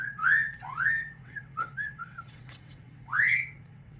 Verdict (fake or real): fake